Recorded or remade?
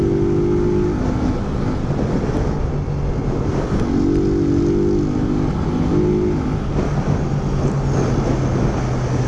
recorded